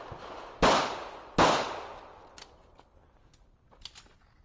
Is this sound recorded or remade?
recorded